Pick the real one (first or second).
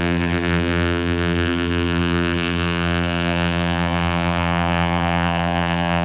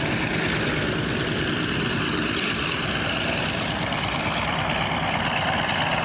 second